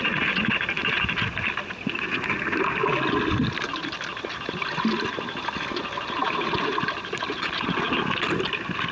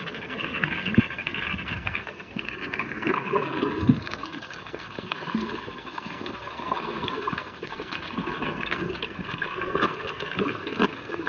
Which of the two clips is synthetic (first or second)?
second